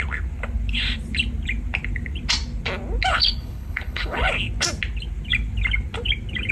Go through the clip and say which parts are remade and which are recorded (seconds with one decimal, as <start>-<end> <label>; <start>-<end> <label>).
0.0-3.1 recorded; 3.1-4.3 remade; 4.3-6.5 recorded